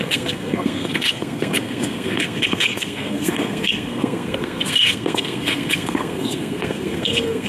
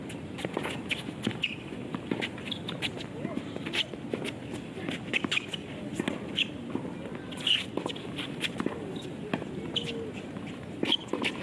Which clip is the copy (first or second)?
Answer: first